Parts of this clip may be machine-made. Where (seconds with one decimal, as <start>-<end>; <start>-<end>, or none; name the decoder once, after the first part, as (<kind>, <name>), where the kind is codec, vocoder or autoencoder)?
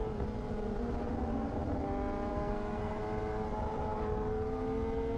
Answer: 2.3-3.0 (codec, SNAC)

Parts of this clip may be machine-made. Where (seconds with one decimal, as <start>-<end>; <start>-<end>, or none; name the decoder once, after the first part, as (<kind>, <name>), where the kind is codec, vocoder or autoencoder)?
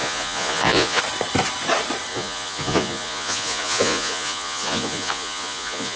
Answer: 0.0-1.0 (vocoder, Vocos); 2.1-6.0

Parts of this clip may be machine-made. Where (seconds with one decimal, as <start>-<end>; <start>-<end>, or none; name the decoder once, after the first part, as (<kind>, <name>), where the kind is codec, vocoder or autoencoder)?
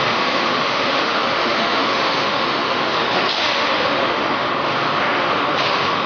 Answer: 0.0-4.5 (autoencoder, DAC-VAE); 5.0-6.1